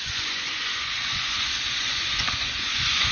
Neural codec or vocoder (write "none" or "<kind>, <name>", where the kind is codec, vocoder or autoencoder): vocoder, Vocos